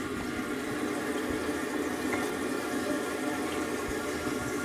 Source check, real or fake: real